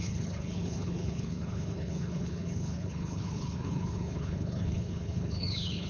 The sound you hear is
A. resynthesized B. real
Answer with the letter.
A